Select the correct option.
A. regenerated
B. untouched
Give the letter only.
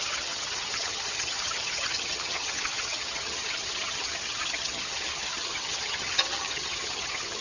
A